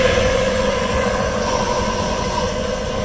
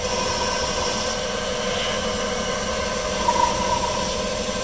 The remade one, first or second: first